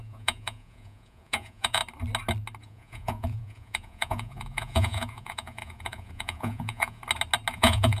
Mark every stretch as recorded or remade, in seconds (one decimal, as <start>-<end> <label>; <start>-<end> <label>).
0.0-1.8 remade; 1.8-2.6 recorded; 2.6-7.0 remade; 7.0-7.5 recorded; 7.5-8.0 remade